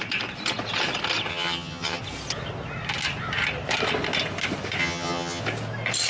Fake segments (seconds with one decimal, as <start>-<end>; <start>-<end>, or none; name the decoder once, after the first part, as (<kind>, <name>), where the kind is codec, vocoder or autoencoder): 1.3-2.0 (vocoder, HiFi-GAN); 4.8-5.4